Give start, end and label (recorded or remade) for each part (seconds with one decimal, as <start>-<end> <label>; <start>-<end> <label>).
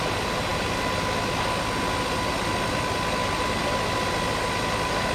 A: 0.0-5.1 recorded